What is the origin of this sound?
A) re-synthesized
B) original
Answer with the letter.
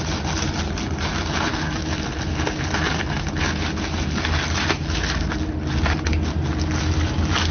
B